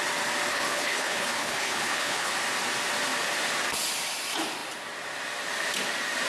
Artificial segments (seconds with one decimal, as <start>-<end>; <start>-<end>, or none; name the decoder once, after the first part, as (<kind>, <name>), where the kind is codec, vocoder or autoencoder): 0.5-2.3 (codec, HILCodec)